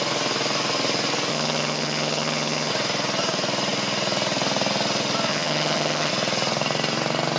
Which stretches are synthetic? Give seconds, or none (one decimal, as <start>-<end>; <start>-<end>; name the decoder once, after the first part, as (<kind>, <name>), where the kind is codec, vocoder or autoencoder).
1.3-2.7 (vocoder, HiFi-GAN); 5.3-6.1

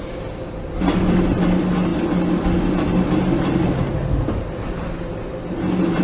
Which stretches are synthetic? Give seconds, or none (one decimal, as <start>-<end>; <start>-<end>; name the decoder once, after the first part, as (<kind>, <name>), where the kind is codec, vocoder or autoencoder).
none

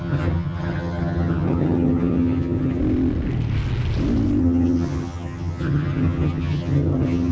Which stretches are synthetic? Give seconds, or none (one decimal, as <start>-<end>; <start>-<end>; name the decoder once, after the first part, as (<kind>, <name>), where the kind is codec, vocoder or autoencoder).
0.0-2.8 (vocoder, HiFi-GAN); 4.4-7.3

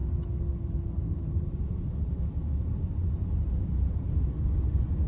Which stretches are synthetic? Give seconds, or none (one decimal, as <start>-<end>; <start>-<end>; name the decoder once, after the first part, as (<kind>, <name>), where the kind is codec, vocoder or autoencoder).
none

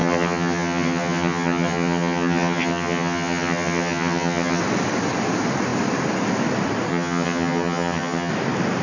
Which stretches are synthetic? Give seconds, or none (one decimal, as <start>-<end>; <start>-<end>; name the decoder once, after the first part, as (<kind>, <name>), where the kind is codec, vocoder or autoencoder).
0.0-4.6 (vocoder, HiFi-GAN); 6.9-8.3